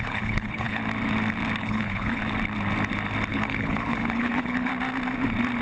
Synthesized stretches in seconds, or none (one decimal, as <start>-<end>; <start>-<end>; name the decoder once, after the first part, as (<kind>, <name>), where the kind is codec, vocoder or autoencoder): 0.0-0.8 (codec, HILCodec); 1.6-2.2; 3.3-4.7